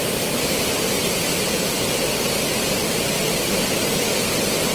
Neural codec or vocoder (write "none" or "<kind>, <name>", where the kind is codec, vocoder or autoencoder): none